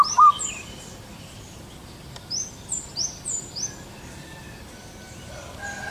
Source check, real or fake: fake